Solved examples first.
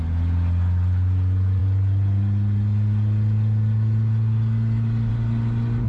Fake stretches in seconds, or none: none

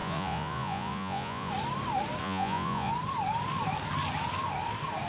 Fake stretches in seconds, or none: 0.0-1.5 (vocoder, Vocos); 2.2-2.9

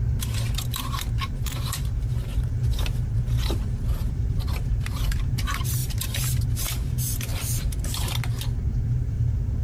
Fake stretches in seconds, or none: 0.0-7.3 (vocoder, BigVGAN v2); 8.7-9.6